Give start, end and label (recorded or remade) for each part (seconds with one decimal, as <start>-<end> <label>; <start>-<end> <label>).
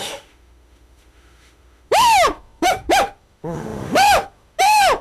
0.0-5.0 remade